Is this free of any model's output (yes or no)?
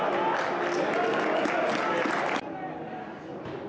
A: yes